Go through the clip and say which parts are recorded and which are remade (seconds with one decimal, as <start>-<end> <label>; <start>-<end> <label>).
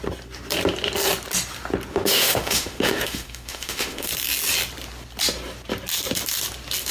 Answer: 0.0-1.9 recorded; 1.9-4.1 remade; 4.1-6.9 recorded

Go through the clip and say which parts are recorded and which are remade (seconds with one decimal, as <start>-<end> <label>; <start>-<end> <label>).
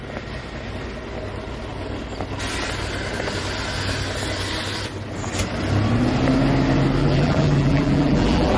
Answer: 0.0-7.0 recorded; 7.0-8.6 remade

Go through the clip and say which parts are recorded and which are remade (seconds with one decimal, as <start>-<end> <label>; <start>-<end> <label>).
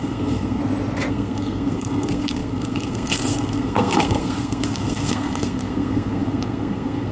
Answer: 0.0-0.6 remade; 0.6-1.1 recorded; 1.1-7.1 remade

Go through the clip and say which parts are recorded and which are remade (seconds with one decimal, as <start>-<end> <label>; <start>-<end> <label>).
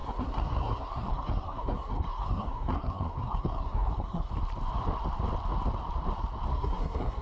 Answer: 0.0-4.3 remade; 4.3-6.5 recorded; 6.5-7.2 remade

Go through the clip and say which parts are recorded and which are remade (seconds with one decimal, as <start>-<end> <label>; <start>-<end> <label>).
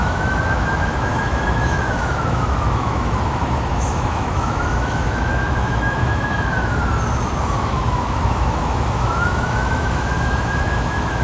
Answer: 0.0-6.8 remade; 6.8-7.4 recorded; 7.4-11.2 remade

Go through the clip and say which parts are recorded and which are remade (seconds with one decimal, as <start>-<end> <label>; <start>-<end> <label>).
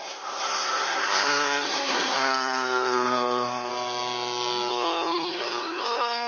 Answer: 0.0-3.7 remade; 3.7-4.7 recorded; 4.7-6.3 remade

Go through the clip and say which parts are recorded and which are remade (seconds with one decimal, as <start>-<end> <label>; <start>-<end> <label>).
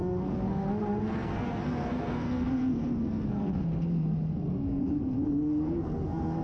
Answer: 0.0-6.4 remade